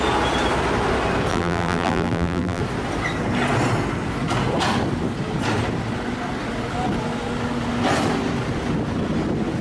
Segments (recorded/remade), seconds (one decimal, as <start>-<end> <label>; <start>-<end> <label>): 0.0-1.3 recorded; 1.3-2.6 remade; 2.6-9.6 recorded